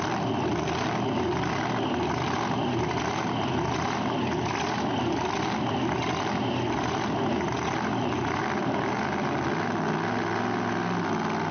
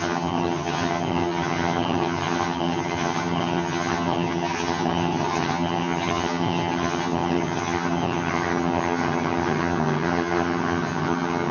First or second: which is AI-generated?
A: second